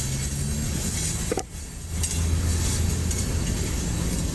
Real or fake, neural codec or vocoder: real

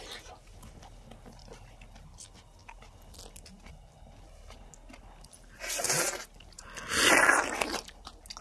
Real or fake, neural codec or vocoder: real